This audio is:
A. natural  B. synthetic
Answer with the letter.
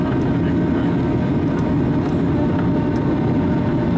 A